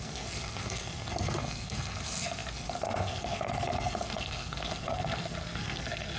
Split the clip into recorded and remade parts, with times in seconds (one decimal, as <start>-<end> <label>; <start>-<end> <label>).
0.0-6.2 remade